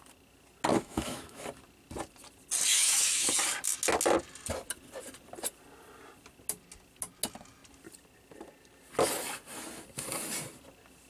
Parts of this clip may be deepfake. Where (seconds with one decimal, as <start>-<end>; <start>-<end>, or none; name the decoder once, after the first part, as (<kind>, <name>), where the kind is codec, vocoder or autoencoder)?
0.7-1.4 (autoencoder, DAC-VAE); 2.7-3.3